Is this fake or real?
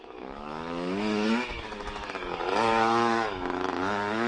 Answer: fake